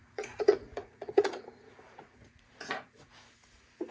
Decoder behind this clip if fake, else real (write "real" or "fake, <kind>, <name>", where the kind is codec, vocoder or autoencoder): fake, vocoder, Vocos